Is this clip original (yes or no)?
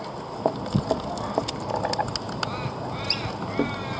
yes